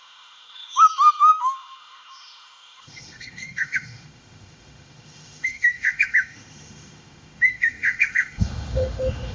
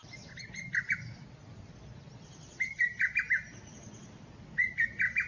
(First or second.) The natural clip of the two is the second